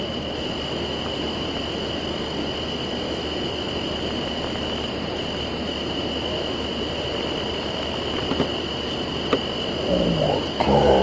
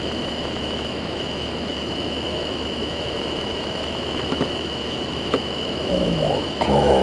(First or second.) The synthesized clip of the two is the second